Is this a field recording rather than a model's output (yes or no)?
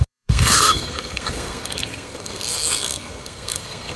no